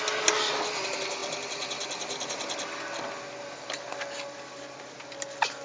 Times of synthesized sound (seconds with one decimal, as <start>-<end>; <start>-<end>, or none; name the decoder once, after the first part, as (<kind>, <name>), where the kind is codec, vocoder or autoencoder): none